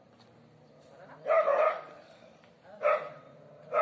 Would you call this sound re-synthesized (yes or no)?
no